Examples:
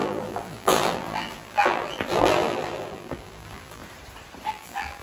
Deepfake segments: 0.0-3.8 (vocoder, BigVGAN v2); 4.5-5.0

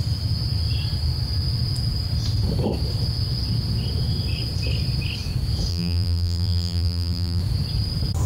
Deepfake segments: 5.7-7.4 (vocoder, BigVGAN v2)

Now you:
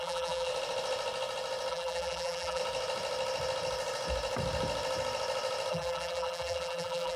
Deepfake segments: 0.0-0.5 (vocoder, BigVGAN v2); 1.7-2.6; 5.7-7.2